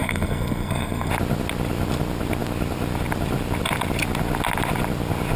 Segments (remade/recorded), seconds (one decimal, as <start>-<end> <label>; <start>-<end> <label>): 0.0-1.1 remade; 1.1-5.4 recorded